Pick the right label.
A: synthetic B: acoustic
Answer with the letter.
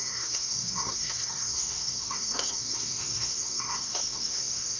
A